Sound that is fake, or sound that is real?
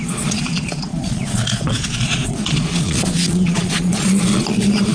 fake